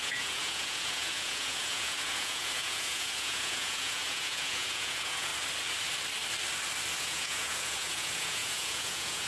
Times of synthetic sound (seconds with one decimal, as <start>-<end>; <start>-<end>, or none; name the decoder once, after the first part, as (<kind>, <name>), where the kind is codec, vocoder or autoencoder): 0.0-5.3 (vocoder, Vocos); 7.0-9.3